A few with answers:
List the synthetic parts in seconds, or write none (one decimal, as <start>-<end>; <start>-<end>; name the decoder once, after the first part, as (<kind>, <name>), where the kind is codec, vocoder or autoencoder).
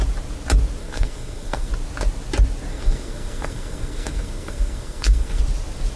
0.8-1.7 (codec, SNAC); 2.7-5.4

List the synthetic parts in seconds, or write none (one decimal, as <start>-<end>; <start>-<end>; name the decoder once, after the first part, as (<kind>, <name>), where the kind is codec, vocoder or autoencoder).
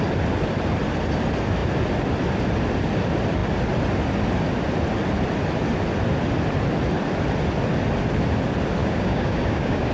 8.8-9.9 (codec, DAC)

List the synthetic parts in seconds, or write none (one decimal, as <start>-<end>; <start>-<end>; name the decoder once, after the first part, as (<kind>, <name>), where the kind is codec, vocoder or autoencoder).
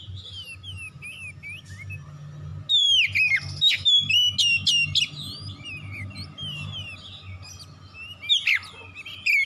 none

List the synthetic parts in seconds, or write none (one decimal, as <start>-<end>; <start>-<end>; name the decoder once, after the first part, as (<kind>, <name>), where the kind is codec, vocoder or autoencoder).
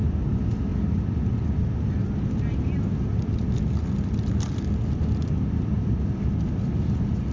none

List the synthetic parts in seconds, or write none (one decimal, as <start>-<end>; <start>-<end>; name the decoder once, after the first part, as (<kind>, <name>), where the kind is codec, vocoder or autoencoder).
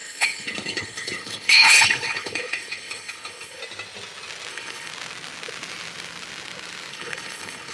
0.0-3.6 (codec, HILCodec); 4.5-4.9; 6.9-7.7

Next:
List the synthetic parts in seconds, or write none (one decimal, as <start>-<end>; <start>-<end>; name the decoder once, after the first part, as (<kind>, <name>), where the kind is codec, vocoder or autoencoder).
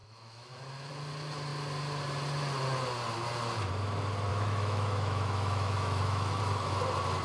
0.0-0.9 (autoencoder, DAC-VAE); 4.3-6.4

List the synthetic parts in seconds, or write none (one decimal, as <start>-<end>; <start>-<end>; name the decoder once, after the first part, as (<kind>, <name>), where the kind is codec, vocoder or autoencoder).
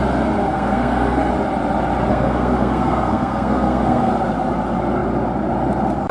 0.5-1.3 (codec, SNAC); 2.1-4.1